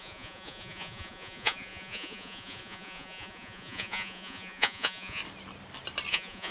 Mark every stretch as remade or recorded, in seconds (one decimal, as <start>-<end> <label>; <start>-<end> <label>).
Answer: 0.0-5.2 remade; 5.2-6.1 recorded; 6.1-6.5 remade